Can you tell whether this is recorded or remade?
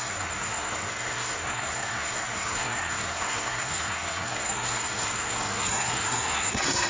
remade